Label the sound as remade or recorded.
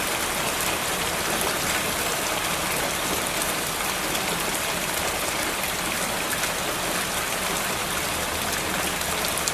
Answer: recorded